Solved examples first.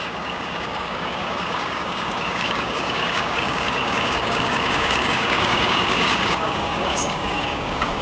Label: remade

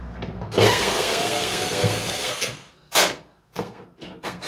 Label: remade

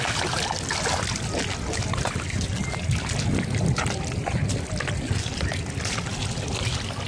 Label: recorded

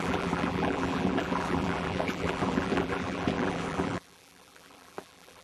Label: remade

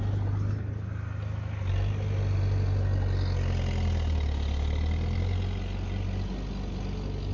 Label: recorded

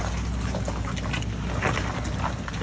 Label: recorded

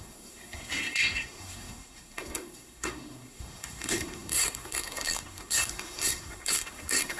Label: remade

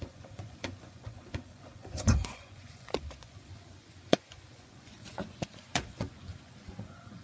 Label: remade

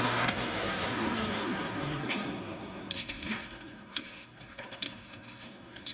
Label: remade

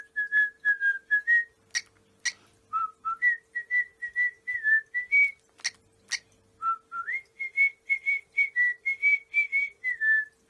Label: recorded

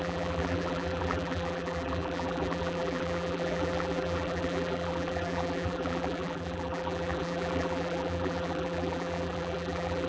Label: remade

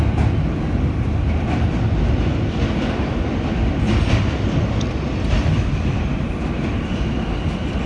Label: recorded